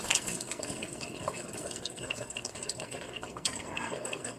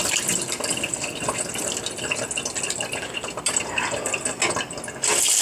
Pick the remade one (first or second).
first